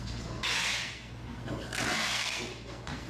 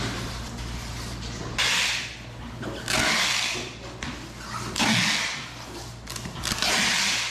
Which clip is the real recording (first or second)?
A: second